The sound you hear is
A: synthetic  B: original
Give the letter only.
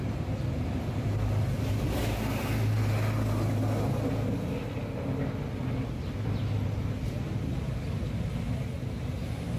B